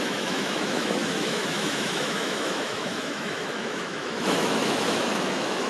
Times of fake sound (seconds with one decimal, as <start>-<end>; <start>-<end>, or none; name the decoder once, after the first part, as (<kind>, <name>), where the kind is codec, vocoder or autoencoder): 0.0-5.7 (autoencoder, DAC-VAE)